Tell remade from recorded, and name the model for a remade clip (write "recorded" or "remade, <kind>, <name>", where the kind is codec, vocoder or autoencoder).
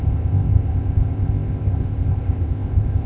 remade, codec, ZipCodec